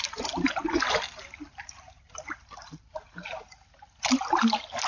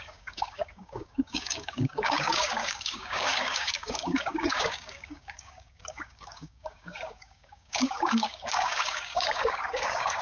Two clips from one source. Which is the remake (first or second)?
second